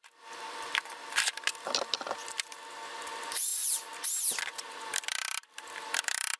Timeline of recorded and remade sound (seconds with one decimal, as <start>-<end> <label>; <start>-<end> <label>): 0.0-3.5 remade; 3.5-4.4 recorded; 4.4-6.4 remade